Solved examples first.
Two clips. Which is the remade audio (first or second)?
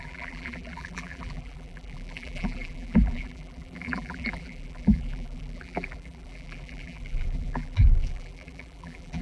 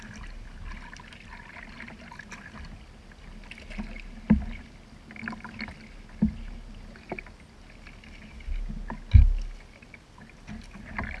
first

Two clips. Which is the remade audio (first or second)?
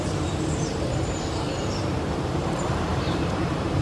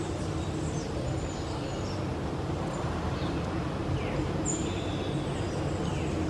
first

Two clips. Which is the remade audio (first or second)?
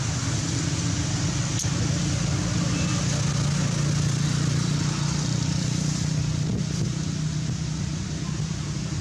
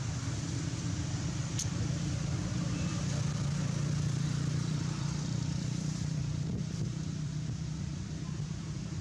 second